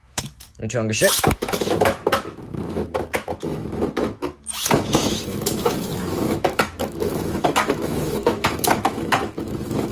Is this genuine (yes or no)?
no